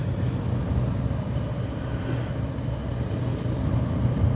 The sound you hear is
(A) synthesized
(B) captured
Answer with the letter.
B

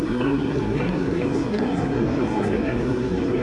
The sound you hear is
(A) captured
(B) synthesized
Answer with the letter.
B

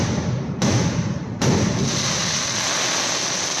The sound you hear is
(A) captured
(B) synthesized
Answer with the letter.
A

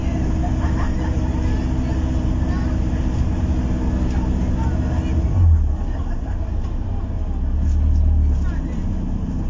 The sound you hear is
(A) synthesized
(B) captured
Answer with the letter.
B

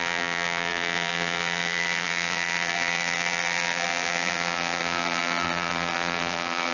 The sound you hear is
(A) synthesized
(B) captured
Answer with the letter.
A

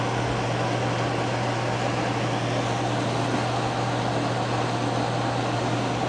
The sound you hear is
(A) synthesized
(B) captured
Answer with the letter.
B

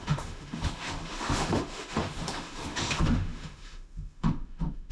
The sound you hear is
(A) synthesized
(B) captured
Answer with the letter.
A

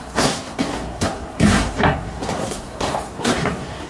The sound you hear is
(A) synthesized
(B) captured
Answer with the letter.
A